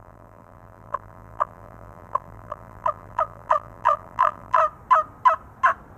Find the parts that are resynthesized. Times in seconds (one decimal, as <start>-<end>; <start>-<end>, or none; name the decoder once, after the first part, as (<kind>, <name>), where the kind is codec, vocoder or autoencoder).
0.0-4.6 (vocoder, BigVGAN v2)